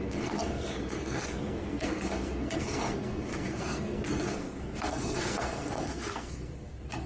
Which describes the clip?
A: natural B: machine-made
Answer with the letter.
B